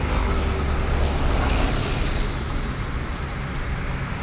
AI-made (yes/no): no